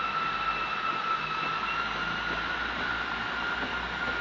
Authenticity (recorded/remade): recorded